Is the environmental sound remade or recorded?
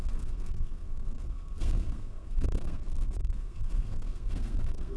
remade